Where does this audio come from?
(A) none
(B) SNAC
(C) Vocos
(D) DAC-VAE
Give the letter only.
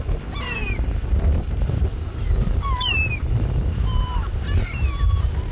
A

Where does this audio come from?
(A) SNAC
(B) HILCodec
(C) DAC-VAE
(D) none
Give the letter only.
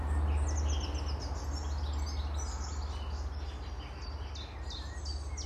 D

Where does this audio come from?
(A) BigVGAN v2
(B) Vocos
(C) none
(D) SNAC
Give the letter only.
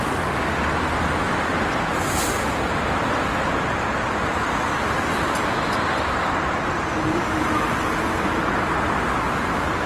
C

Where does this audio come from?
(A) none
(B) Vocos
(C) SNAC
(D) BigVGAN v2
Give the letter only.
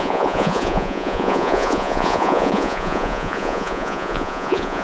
B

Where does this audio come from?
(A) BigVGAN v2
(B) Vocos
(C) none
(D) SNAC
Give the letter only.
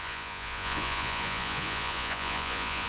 B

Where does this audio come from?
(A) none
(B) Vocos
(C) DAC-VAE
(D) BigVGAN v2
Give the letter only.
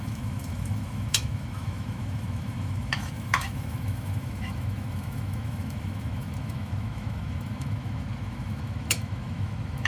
C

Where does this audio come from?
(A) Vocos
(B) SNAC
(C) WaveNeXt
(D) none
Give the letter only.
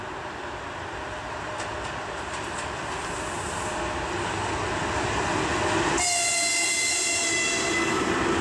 D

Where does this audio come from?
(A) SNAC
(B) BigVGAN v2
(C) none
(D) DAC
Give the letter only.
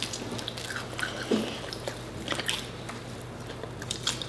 C